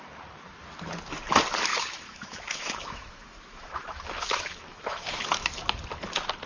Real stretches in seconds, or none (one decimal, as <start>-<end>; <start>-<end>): 0.0-1.7; 5.6-6.5